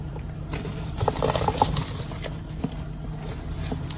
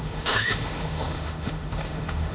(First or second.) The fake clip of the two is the second